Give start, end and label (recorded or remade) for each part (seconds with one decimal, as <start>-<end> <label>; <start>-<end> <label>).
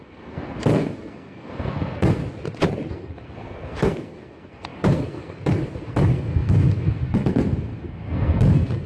0.0-2.2 remade; 2.2-2.9 recorded; 2.9-8.9 remade